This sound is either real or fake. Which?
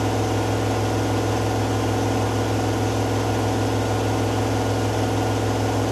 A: real